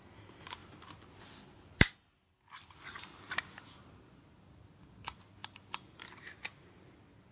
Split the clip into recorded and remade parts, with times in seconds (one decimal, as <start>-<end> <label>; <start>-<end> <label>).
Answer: 0.0-7.3 recorded